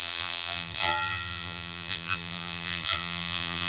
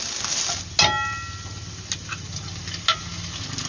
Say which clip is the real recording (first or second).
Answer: second